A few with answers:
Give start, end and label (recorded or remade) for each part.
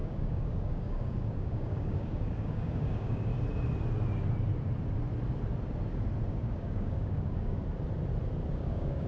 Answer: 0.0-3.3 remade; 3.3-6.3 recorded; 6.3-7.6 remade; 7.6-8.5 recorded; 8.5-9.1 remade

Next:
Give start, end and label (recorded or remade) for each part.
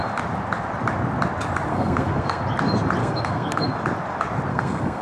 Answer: 0.0-1.7 recorded; 1.7-2.4 remade; 2.4-3.0 recorded; 3.0-3.7 remade; 3.7-4.5 recorded; 4.5-5.0 remade